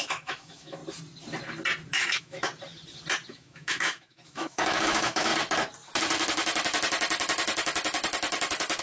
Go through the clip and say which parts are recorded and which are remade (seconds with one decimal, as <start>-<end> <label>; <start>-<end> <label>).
0.0-0.8 remade; 0.8-1.9 recorded; 1.9-2.5 remade; 2.5-3.3 recorded; 3.3-5.3 remade; 5.3-8.8 recorded